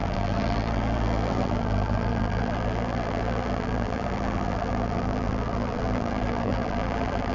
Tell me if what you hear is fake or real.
fake